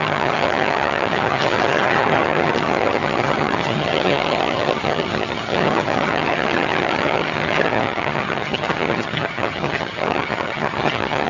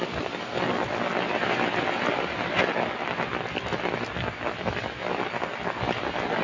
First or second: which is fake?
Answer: first